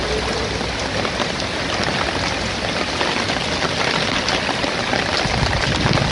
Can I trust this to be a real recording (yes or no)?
yes